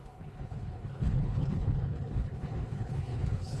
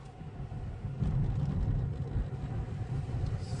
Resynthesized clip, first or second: first